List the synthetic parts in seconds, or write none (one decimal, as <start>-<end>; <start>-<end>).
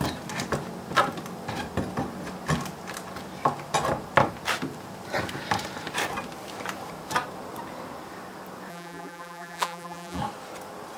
8.7-10.2